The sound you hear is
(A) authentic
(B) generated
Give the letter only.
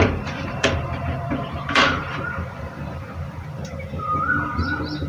B